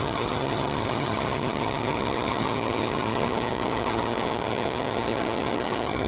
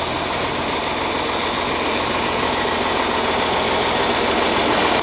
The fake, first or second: first